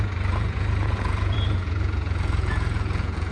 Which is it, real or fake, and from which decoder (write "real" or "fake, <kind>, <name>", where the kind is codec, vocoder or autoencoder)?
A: fake, vocoder, Vocos